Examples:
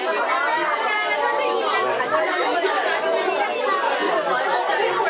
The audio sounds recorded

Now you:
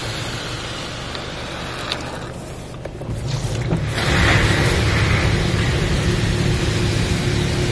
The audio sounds recorded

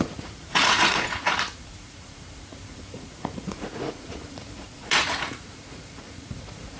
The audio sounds remade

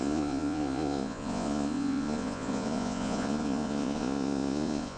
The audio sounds remade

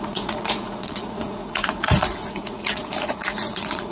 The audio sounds remade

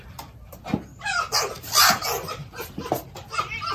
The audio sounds recorded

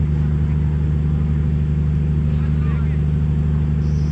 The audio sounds recorded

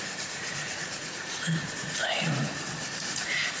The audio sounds remade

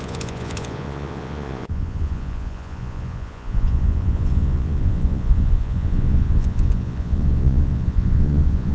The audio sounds remade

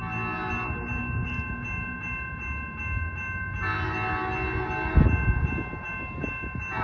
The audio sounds recorded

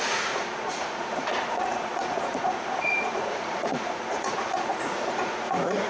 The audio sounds remade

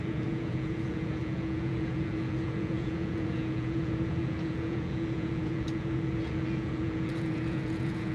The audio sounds remade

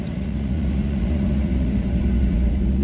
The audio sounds remade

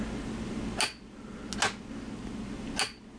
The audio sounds recorded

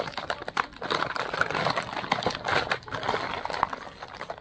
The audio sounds recorded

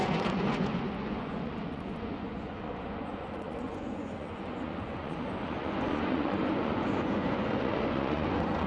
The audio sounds remade